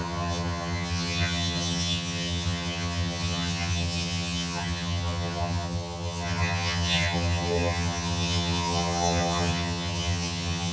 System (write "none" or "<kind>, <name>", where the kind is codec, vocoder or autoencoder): vocoder, HiFi-GAN